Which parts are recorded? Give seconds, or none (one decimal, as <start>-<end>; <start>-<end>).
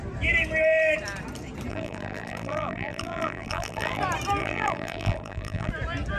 0.0-1.7; 4.0-4.4; 5.7-6.2